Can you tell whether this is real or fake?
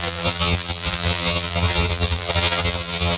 fake